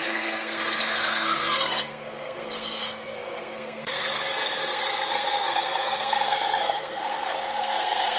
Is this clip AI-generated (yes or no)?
yes